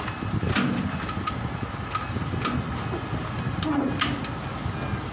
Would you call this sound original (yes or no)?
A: yes